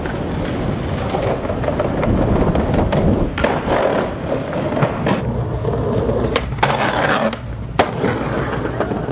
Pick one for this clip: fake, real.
real